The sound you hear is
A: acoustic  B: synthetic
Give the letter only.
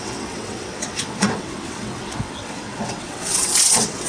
B